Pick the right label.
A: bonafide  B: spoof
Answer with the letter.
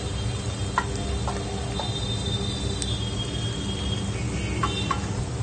A